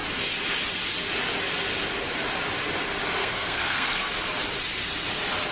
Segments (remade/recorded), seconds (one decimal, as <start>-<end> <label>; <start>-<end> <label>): 0.0-3.2 recorded; 3.2-4.1 remade; 4.1-5.5 recorded